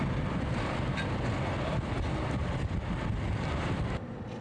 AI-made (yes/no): no